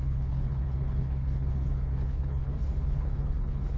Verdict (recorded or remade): remade